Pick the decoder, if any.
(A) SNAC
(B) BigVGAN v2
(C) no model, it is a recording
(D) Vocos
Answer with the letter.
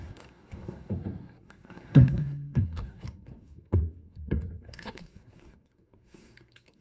A